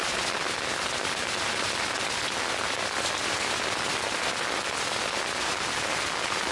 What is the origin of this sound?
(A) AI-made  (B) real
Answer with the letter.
B